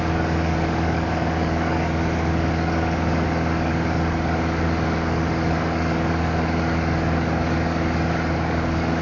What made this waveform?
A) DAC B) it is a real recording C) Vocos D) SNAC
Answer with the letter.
A